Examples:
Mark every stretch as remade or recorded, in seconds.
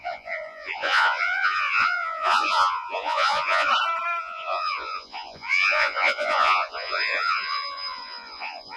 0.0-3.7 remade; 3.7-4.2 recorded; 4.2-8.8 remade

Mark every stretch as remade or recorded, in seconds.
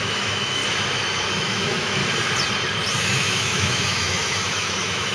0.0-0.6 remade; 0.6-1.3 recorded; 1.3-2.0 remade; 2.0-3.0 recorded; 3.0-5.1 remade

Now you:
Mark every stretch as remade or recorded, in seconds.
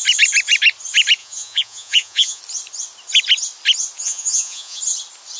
0.0-1.2 recorded; 1.2-2.4 remade; 2.4-4.0 recorded; 4.0-4.8 remade; 4.8-5.4 recorded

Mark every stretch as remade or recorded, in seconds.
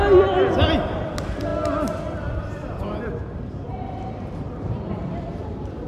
0.0-1.5 remade; 1.5-2.8 recorded; 2.8-3.7 remade; 3.7-5.0 recorded; 5.0-5.9 remade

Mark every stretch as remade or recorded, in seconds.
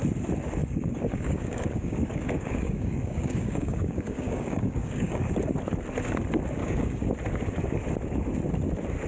0.0-0.6 recorded; 0.6-5.3 remade; 5.3-6.6 recorded; 6.6-7.1 remade; 7.1-9.1 recorded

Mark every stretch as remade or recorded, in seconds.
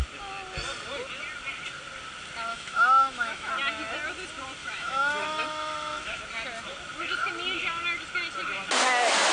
0.0-2.5 recorded; 2.5-3.5 remade; 3.5-4.6 recorded; 4.6-6.2 remade; 6.2-9.3 recorded